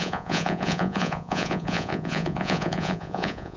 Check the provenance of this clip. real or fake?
fake